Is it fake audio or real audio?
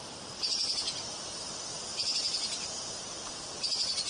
real